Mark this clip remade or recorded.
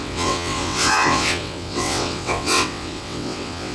remade